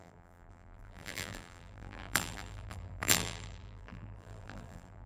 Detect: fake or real fake